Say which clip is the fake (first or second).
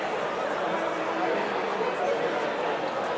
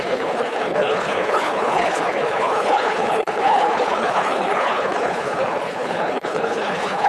second